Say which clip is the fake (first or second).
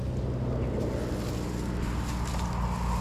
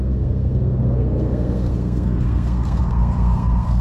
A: second